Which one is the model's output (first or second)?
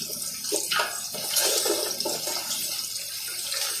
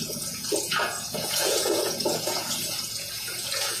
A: second